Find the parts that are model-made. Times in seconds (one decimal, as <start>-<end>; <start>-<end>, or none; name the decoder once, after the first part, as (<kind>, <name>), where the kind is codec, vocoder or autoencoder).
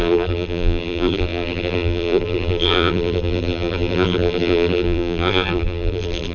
0.0-6.3 (vocoder, BigVGAN v2)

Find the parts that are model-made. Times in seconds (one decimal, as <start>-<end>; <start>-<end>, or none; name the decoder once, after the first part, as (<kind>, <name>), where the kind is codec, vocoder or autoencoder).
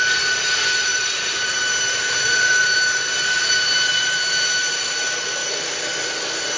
0.9-4.9 (vocoder, BigVGAN v2)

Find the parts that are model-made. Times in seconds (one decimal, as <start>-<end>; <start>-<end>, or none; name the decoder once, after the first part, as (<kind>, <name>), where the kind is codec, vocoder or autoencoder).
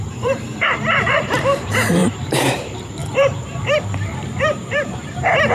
0.0-3.0 (vocoder, BigVGAN v2); 3.8-5.5